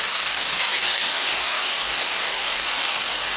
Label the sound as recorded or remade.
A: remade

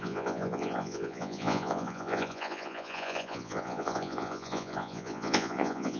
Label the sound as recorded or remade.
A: remade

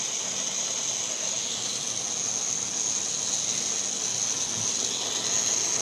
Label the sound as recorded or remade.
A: recorded